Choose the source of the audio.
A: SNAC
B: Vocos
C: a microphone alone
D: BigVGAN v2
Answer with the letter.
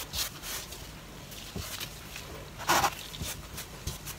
C